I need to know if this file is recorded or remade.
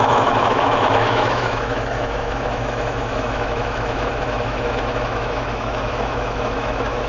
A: remade